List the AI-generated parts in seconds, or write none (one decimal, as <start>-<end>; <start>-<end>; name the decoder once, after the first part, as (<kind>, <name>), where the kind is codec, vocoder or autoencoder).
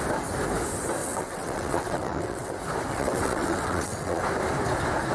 1.0-2.5 (vocoder, WaveNeXt); 2.9-4.2